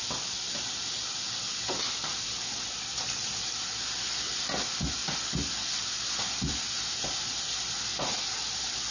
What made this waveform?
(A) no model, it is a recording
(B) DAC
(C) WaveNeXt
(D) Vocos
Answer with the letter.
A